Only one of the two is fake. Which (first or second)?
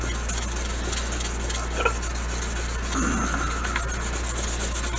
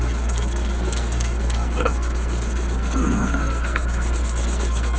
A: second